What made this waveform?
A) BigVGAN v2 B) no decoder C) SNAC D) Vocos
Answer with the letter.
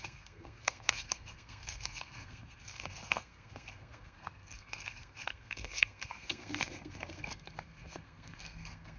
C